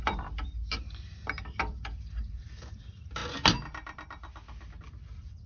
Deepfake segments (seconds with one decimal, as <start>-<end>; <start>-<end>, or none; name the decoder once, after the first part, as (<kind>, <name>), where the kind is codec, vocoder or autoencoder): 0.0-0.6 (vocoder, BigVGAN v2); 1.6-3.2; 4.8-5.5